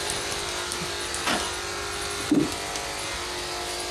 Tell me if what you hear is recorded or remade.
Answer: recorded